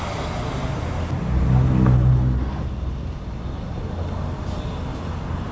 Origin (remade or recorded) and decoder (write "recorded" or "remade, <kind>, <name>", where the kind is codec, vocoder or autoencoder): recorded